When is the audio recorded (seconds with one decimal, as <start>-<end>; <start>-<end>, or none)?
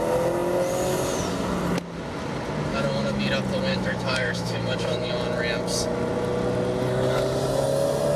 0.0-2.7; 3.2-3.7; 5.1-8.2